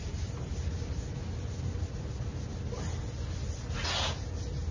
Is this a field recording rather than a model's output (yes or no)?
yes